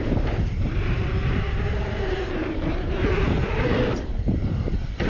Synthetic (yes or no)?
yes